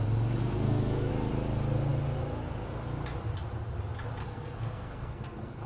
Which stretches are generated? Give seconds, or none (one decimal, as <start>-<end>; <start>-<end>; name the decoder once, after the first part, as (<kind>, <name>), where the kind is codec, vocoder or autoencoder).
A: 0.4-1.1 (codec, SNAC); 4.2-5.7